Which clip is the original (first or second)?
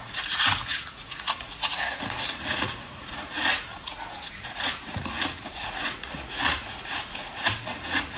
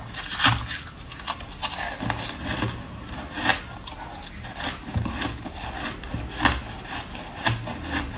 second